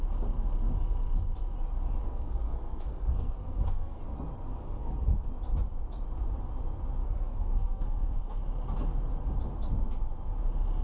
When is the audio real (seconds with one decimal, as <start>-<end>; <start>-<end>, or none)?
0.0-2.0; 4.0-4.6; 5.3-7.0; 8.4-10.8

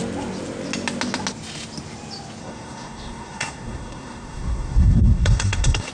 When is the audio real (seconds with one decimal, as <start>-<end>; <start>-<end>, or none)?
0.0-2.4

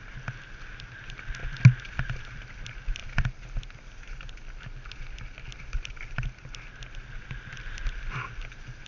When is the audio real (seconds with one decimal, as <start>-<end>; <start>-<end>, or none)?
0.0-8.9

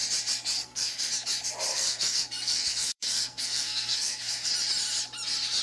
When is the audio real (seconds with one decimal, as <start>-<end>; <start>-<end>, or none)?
0.0-0.6; 1.1-1.7; 4.5-5.6

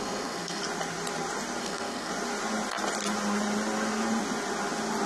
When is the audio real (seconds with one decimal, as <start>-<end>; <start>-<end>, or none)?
0.6-1.6; 2.1-5.1

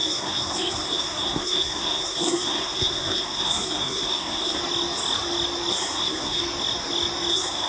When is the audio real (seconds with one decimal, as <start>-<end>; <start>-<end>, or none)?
4.6-5.7; 6.4-7.3

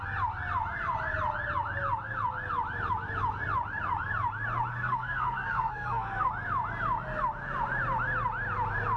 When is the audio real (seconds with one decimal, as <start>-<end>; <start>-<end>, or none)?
0.0-4.7; 6.3-9.0

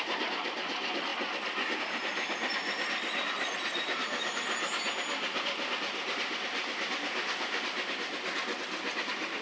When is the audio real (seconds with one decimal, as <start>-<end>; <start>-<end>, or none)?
0.0-9.4